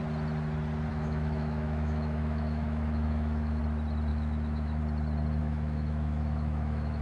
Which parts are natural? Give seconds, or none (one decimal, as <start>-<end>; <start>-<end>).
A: 0.0-0.9; 3.6-4.1; 4.8-5.4